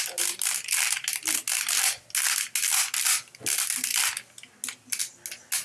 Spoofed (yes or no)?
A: no